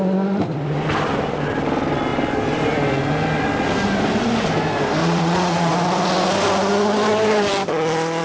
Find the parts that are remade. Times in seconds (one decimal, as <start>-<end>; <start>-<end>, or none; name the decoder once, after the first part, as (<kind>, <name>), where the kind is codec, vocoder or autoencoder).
5.0-5.7 (vocoder, Vocos)